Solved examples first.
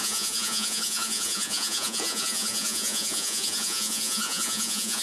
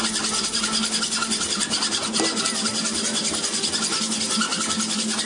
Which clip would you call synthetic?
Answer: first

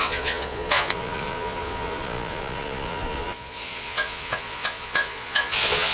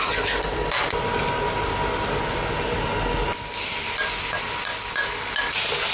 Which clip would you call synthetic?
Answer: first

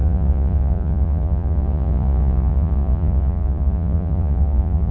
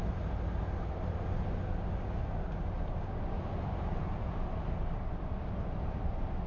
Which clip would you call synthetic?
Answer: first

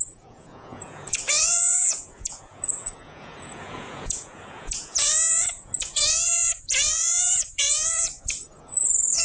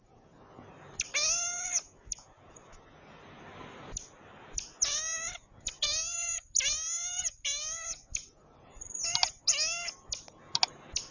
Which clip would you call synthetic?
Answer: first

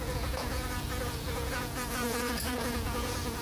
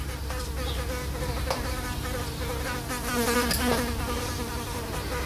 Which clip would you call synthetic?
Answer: first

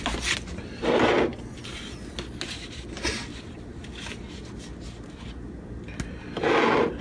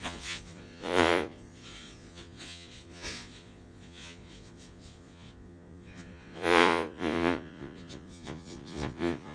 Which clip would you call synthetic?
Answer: second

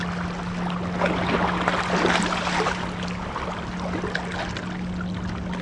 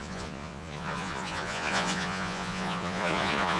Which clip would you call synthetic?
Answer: second